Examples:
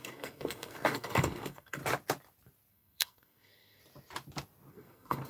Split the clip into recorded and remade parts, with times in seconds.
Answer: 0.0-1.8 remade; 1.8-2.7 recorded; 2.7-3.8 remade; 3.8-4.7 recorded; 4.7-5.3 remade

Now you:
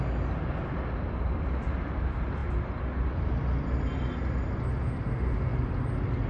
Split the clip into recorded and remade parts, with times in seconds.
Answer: 0.0-6.3 recorded

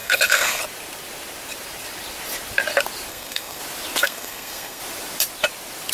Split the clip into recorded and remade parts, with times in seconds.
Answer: 0.0-0.6 remade; 0.6-3.1 recorded; 3.1-3.6 remade; 3.6-4.0 recorded; 4.0-4.8 remade; 4.8-5.9 recorded

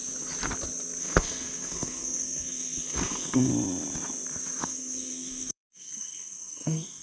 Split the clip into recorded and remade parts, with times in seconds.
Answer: 0.0-1.0 recorded; 1.0-3.5 remade; 3.5-4.6 recorded; 4.6-7.0 remade

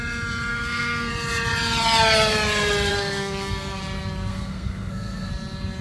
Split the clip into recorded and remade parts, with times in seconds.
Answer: 0.0-0.5 recorded; 0.5-1.1 remade; 1.1-2.9 recorded; 2.9-3.8 remade; 3.8-4.3 recorded; 4.3-5.3 remade; 5.3-5.8 recorded